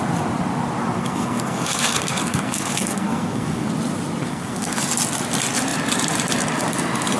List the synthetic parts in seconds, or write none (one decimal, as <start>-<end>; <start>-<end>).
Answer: 1.0-3.7; 4.2-4.8